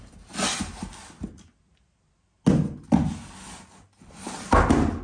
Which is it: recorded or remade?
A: recorded